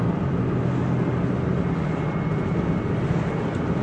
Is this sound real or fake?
real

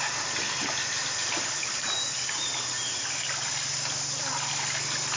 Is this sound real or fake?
real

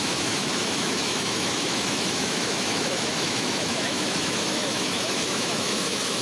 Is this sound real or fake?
fake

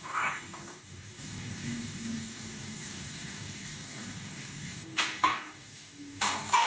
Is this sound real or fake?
fake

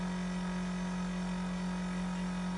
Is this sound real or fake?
real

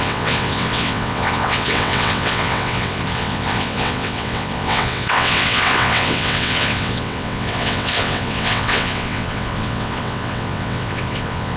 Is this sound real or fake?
fake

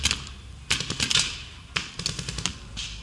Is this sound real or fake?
real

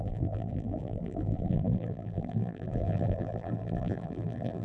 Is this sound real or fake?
fake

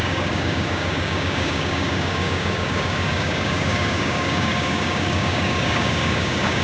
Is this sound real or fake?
fake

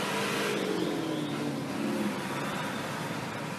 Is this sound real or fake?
real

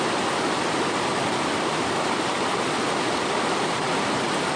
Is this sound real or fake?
real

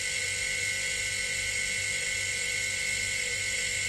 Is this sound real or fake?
real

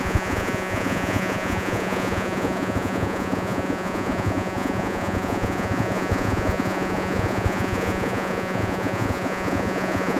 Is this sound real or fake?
fake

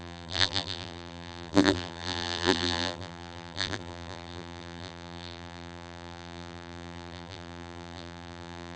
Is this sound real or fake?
fake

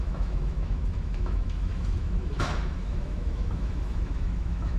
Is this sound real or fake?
fake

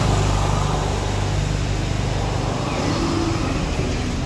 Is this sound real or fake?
real